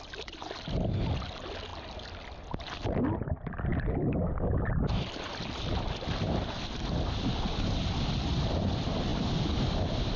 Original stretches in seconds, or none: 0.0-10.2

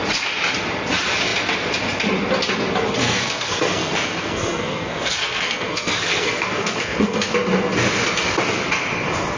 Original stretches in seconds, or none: 0.0-3.0; 7.3-9.4

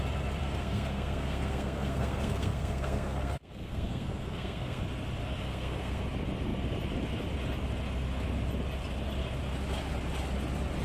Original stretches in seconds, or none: 0.0-0.4; 4.8-5.4; 6.0-10.8

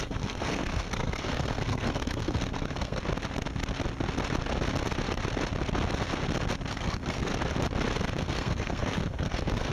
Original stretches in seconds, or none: 3.0-6.7; 7.3-8.2

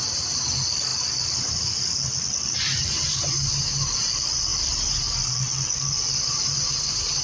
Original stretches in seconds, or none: 0.0-7.2

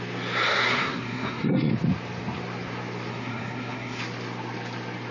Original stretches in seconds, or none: 0.0-0.5; 1.7-3.1; 4.0-5.1

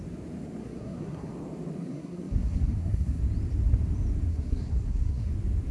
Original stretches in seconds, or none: 0.0-0.6; 1.3-1.8; 3.2-4.3; 5.3-5.7

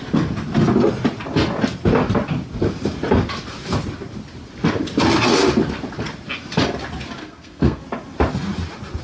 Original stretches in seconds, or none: 0.0-7.2; 7.8-9.0